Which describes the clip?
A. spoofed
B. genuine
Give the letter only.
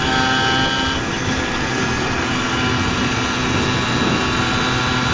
B